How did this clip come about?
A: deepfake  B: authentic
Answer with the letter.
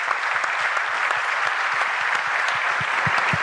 B